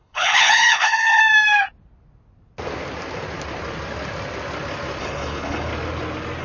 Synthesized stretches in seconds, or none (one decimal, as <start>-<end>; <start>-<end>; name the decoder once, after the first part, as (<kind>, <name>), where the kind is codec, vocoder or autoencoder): 0.0-1.2 (codec, HILCodec); 5.0-5.7

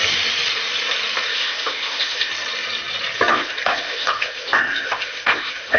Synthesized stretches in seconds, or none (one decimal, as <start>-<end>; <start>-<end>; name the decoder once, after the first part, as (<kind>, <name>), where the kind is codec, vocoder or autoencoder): 1.3-2.3 (codec, ZipCodec); 3.3-5.8